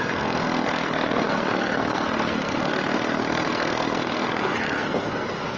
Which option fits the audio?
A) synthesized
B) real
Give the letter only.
A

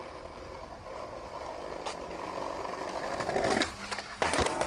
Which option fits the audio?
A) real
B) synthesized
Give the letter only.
A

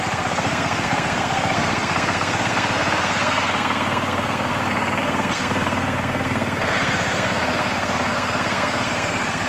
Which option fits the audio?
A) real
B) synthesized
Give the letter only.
B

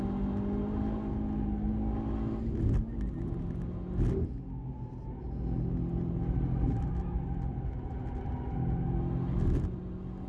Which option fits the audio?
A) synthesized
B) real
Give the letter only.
B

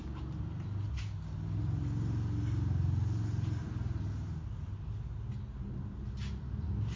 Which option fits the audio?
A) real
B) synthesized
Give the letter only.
A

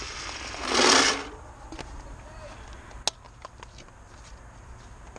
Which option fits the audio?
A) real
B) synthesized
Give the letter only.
A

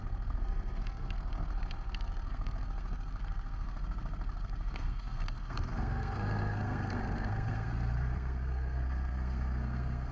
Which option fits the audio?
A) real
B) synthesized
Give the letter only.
B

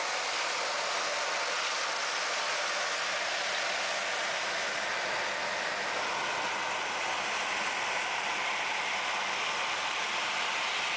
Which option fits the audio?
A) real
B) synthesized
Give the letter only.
A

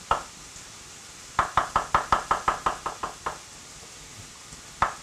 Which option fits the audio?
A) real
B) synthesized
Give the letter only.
A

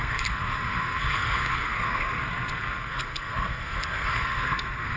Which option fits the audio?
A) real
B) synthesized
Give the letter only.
B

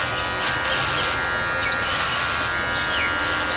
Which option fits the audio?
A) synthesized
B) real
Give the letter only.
B